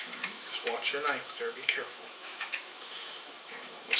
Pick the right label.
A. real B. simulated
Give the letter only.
B